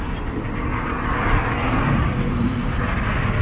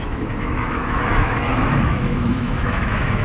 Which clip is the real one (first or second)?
first